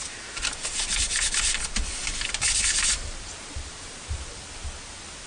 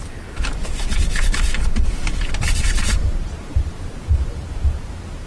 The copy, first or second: second